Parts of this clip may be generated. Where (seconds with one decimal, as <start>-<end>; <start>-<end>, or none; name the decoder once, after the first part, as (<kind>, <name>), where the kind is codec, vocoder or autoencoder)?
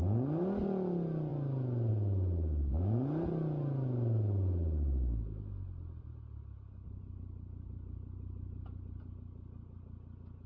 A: none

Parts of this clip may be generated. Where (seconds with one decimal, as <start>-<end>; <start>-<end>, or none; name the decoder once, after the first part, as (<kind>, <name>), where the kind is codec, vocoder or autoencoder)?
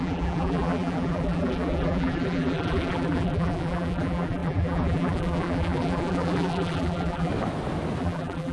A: 0.0-7.3 (vocoder, BigVGAN v2); 8.0-8.5